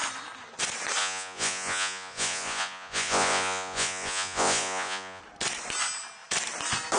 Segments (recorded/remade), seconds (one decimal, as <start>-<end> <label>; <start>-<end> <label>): 0.0-1.0 recorded; 1.0-5.2 remade; 5.2-7.0 recorded